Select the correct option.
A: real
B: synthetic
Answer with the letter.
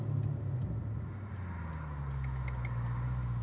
A